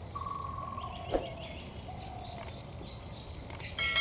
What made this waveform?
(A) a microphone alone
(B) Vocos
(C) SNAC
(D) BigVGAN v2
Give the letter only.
A